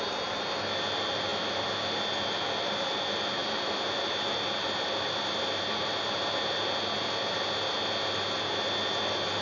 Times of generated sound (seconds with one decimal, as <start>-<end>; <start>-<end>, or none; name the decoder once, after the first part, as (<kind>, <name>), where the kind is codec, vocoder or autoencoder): none